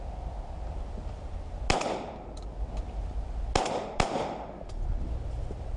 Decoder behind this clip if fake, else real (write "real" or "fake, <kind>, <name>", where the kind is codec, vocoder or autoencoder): real